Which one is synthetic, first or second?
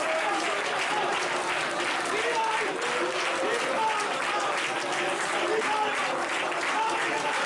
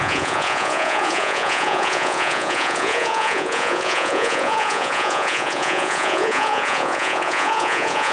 second